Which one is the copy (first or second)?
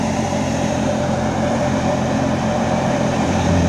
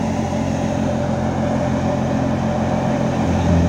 first